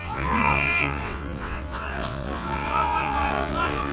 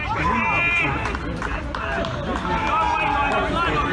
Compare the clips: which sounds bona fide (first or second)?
second